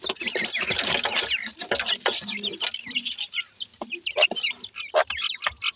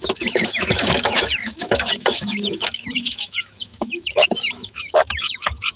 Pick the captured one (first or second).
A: first